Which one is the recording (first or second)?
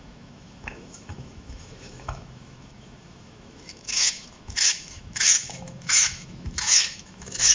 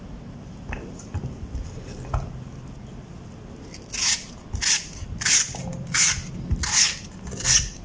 second